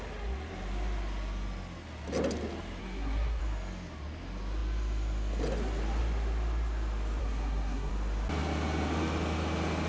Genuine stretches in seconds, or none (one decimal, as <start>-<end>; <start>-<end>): 0.0-2.8; 3.4-7.2; 7.9-9.9